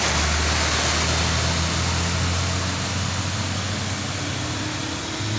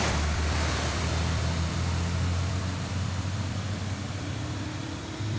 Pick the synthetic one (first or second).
second